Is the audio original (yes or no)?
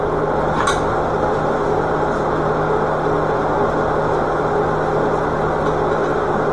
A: yes